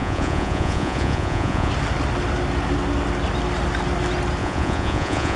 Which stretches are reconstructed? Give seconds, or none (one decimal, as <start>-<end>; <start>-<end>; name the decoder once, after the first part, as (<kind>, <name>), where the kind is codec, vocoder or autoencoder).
0.0-1.7 (vocoder, Vocos); 4.4-5.4